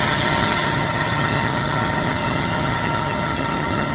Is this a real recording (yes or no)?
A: no